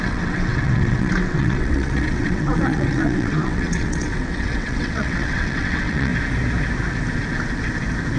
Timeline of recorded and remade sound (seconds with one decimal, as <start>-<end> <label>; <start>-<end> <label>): 0.0-6.1 remade; 6.1-8.2 recorded